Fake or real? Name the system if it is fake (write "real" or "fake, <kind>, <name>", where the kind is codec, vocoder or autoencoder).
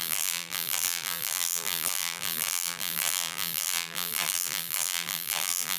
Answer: fake, vocoder, BigVGAN v2